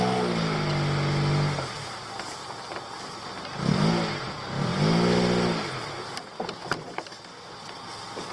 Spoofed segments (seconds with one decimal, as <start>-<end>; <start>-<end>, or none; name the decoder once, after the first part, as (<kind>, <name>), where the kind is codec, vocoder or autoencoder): none